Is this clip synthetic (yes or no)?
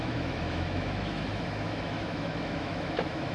yes